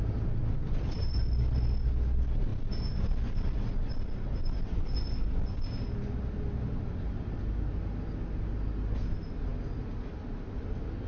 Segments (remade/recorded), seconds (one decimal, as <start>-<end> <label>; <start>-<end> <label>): 0.0-11.1 recorded